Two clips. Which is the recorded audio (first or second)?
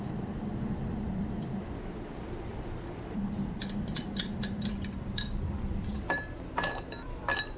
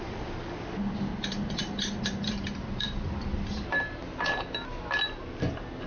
second